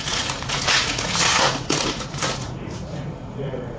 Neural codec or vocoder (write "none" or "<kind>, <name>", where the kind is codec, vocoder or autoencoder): vocoder, Vocos